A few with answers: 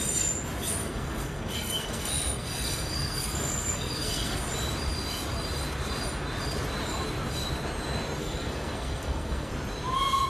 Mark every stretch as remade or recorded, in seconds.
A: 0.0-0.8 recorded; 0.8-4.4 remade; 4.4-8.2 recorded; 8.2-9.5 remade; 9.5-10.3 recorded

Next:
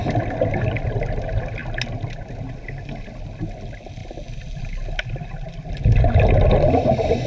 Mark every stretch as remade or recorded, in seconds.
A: 0.0-7.3 recorded